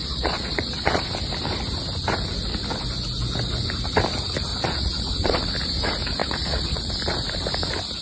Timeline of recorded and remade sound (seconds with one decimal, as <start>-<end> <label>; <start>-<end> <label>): 0.0-1.1 remade; 1.1-4.5 recorded; 4.5-5.4 remade; 5.4-6.2 recorded; 6.2-6.9 remade; 6.9-8.0 recorded